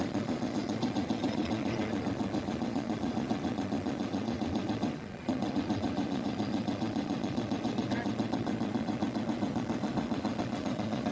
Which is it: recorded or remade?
remade